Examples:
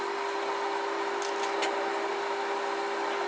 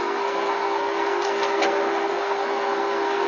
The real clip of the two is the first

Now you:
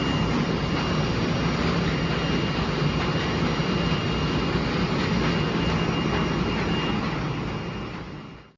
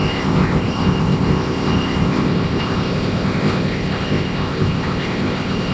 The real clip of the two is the first